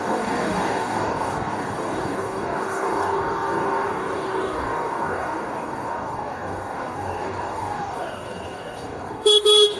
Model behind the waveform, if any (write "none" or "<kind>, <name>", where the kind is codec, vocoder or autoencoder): codec, DAC